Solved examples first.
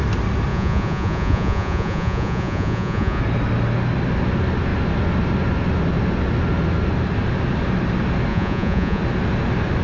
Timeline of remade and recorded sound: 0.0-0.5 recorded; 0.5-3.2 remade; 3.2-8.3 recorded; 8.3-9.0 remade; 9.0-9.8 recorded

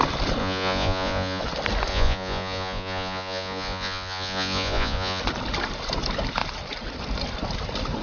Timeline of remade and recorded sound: 0.0-0.4 recorded; 0.4-1.4 remade; 1.4-1.9 recorded; 1.9-5.2 remade; 5.2-8.0 recorded

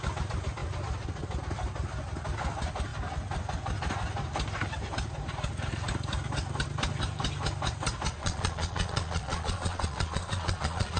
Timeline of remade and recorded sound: 0.0-8.2 recorded; 8.2-11.0 remade

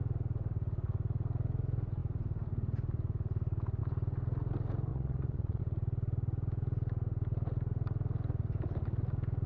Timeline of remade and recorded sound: 0.0-4.9 recorded; 4.9-5.6 remade; 5.6-9.5 recorded